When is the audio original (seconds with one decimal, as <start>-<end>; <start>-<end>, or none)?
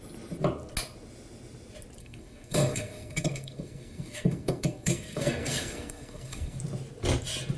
0.0-2.0; 6.6-7.6